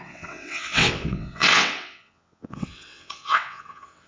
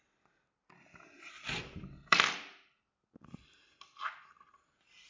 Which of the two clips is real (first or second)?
second